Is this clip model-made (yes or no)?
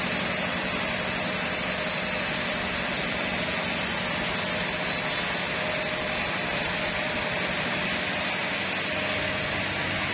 no